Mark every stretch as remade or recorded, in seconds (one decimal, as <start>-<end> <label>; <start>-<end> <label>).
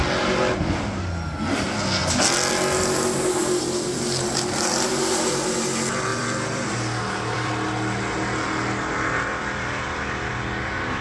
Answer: 0.0-6.1 recorded; 6.1-7.5 remade; 7.5-9.3 recorded; 9.3-10.3 remade; 10.3-11.0 recorded